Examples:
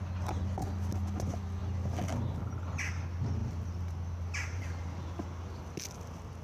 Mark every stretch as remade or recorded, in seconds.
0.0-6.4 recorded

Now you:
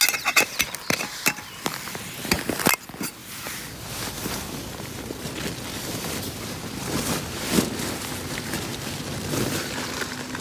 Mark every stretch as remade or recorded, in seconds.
0.0-3.2 recorded; 3.2-6.4 remade; 6.4-10.4 recorded

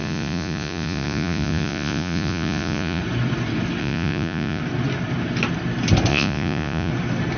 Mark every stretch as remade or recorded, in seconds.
0.0-3.0 remade; 3.0-3.8 recorded; 3.8-4.6 remade; 4.6-6.1 recorded; 6.1-6.9 remade; 6.9-7.4 recorded

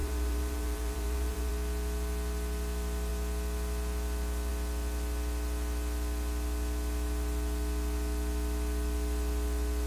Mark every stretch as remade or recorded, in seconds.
0.0-1.5 remade; 1.5-9.9 recorded

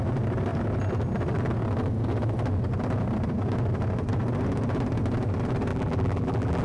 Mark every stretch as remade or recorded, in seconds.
0.0-5.7 recorded; 5.7-6.6 remade

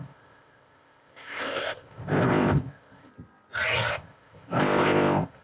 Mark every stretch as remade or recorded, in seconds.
0.0-3.1 remade; 3.1-3.9 recorded; 3.9-5.4 remade

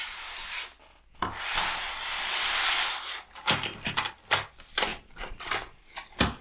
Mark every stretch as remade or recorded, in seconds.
0.0-4.9 recorded; 4.9-5.9 remade; 5.9-6.4 recorded